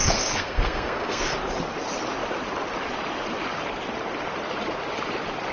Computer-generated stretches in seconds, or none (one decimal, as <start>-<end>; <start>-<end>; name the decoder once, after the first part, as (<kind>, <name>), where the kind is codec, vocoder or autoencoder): 0.0-1.2 (codec, SNAC)